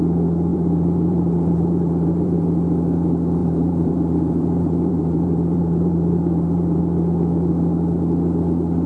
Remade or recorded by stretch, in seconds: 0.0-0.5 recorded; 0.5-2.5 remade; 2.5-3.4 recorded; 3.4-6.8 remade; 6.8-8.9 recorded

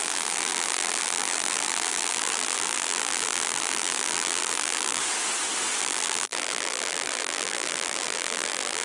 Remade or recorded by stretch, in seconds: 0.0-5.0 remade; 5.0-5.8 recorded; 5.8-8.8 remade

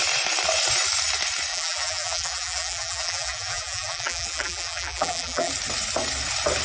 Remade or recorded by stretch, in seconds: 0.0-1.5 recorded; 1.5-5.5 remade; 5.5-6.6 recorded

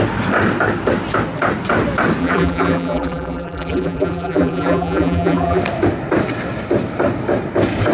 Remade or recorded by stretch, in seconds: 0.0-2.2 recorded; 2.2-5.6 remade; 5.6-7.9 recorded